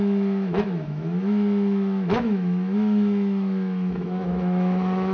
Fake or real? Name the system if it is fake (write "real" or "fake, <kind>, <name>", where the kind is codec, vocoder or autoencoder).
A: fake, autoencoder, DAC-VAE